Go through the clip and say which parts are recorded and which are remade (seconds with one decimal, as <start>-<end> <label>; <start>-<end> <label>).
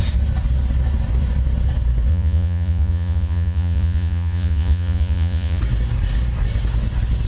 0.0-2.1 recorded; 2.1-5.6 remade; 5.6-7.3 recorded